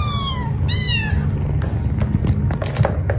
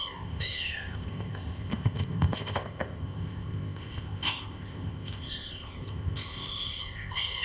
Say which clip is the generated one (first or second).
second